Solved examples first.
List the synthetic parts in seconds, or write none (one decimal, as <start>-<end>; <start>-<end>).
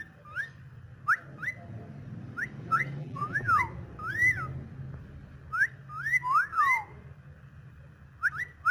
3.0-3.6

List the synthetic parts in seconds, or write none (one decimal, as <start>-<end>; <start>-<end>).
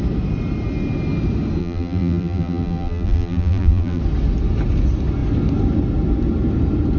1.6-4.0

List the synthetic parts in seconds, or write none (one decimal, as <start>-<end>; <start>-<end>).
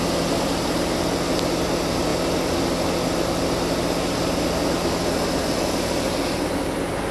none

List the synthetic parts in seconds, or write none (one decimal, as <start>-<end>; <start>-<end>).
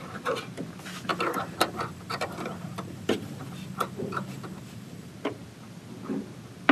1.1-5.1